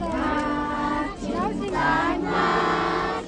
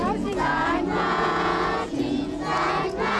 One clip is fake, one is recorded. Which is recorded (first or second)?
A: first